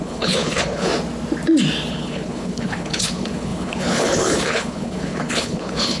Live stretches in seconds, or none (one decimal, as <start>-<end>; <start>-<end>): 0.9-1.9